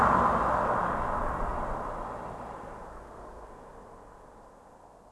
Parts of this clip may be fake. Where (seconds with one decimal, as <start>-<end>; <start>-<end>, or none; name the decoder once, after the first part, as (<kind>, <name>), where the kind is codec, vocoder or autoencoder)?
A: 2.9-3.5 (codec, SNAC)